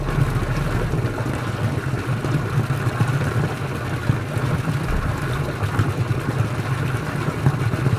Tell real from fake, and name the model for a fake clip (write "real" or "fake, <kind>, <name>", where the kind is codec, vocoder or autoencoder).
real